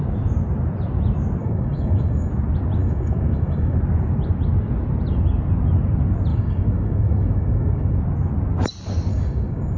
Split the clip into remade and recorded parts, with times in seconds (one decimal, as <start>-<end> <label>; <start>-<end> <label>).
0.0-1.4 recorded; 1.4-2.3 remade; 2.3-2.8 recorded; 2.8-3.8 remade; 3.8-6.3 recorded; 6.3-8.0 remade; 8.0-9.1 recorded; 9.1-9.8 remade